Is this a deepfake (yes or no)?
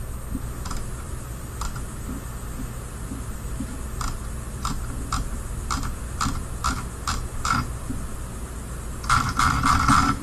no